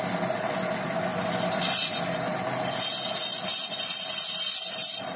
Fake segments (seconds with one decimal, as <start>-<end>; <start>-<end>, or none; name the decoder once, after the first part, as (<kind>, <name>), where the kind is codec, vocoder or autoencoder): none